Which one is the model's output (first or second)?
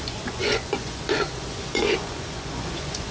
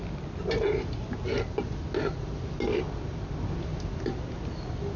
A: first